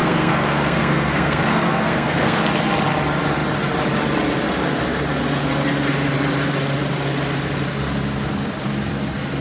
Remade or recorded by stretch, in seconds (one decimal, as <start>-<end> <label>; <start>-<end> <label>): 0.0-2.4 remade; 2.4-9.4 recorded